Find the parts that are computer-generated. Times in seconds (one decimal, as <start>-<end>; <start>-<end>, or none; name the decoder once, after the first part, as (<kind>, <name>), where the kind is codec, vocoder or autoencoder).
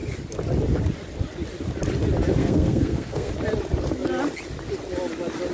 2.4-3.3 (codec, SNAC)